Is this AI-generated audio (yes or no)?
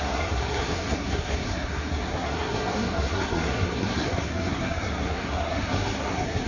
yes